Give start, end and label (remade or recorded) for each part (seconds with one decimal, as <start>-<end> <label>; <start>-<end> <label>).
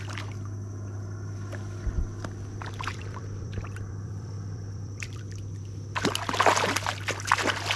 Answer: 0.0-2.9 recorded; 2.9-5.2 remade; 5.2-7.8 recorded